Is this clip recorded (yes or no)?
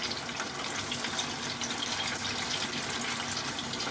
yes